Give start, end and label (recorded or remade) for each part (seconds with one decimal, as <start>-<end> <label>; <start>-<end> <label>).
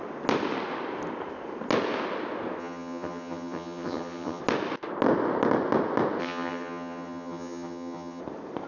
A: 0.0-2.6 recorded; 2.6-4.4 remade; 4.4-6.2 recorded; 6.2-8.2 remade; 8.2-8.7 recorded